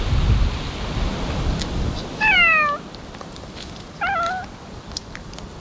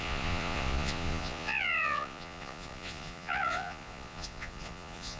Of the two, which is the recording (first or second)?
first